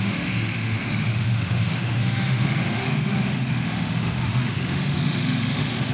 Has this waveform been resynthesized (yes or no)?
yes